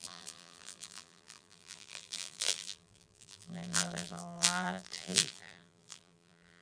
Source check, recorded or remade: remade